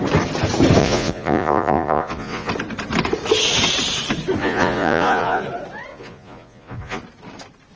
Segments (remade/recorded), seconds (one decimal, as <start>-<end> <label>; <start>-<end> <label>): 0.0-0.8 recorded; 0.8-2.5 remade; 2.5-4.4 recorded; 4.4-5.4 remade; 5.4-5.9 recorded; 5.9-7.0 remade; 7.0-7.8 recorded